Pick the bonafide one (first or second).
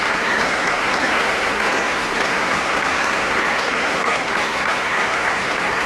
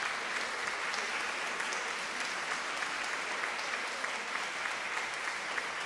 second